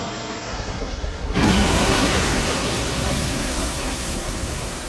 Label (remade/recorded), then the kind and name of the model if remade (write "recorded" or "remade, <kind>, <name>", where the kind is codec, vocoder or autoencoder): remade, codec, SNAC